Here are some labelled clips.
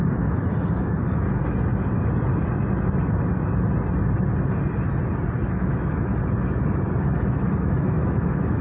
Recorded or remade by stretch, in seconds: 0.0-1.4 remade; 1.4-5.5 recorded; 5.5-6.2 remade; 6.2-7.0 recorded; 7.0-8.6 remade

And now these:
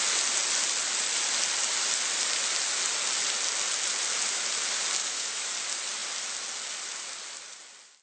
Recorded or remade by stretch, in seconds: 0.0-5.0 recorded; 5.0-5.5 remade; 5.5-8.0 recorded

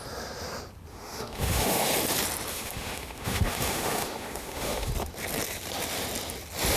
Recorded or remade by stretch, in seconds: 0.0-0.9 recorded; 0.9-1.9 remade; 1.9-2.5 recorded; 2.5-4.9 remade; 4.9-6.8 recorded